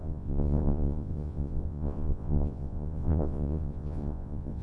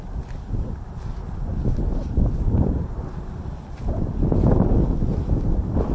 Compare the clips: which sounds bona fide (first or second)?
second